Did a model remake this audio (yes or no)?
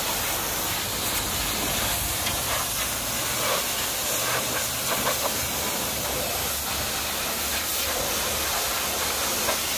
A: no